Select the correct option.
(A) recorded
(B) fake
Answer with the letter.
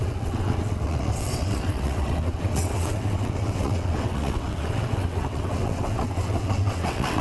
B